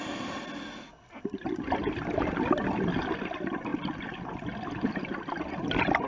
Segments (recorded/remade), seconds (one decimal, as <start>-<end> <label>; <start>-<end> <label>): 0.0-6.1 recorded

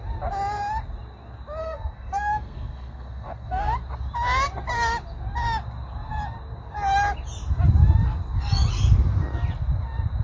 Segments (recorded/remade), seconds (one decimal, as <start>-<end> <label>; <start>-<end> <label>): 0.0-1.6 recorded; 1.6-3.7 remade; 3.7-10.2 recorded

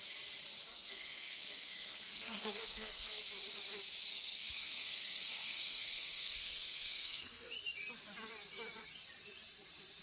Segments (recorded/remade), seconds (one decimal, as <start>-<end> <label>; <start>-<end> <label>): 0.0-0.7 recorded; 0.7-3.2 remade; 3.2-4.1 recorded; 4.1-7.5 remade; 7.5-10.0 recorded

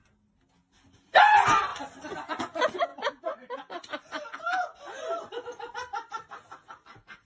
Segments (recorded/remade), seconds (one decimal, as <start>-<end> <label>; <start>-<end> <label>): 0.0-1.7 recorded; 1.7-2.4 remade; 2.4-2.9 recorded; 2.9-7.3 remade

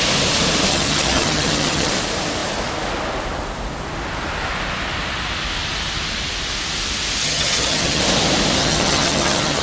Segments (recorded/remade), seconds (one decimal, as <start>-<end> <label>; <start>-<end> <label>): 0.0-0.7 recorded; 0.7-1.9 remade; 1.9-7.2 recorded; 7.2-8.0 remade; 8.0-8.6 recorded; 8.6-9.6 remade